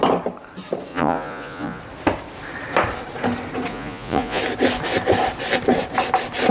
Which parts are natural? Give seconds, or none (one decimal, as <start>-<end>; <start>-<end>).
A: 0.0-0.9; 1.8-3.7; 4.4-6.5